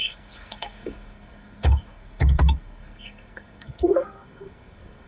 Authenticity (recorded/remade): remade